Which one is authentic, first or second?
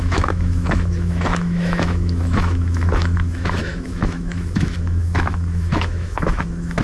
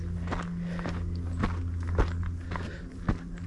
second